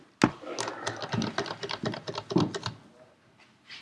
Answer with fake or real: real